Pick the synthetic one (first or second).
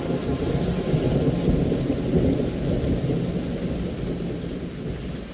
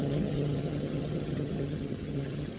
second